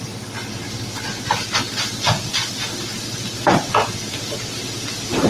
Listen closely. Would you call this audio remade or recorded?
recorded